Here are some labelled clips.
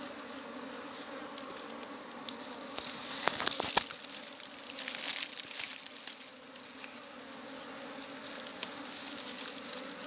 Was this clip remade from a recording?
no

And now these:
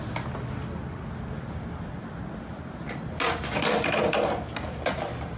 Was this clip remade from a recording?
no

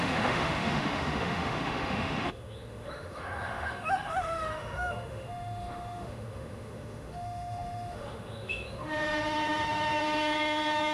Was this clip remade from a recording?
yes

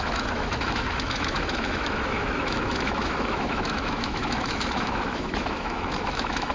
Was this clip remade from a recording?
yes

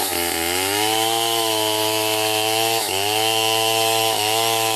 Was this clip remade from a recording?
yes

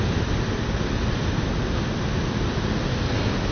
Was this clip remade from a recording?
no